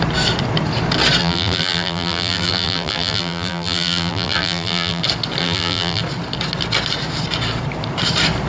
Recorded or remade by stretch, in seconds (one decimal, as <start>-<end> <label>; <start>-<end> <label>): 0.0-1.2 recorded; 1.2-5.0 remade; 5.0-5.4 recorded; 5.4-6.0 remade; 6.0-8.5 recorded